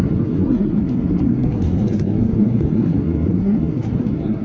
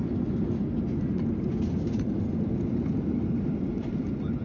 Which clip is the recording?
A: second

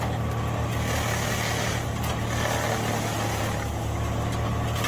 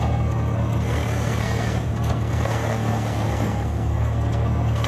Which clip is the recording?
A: first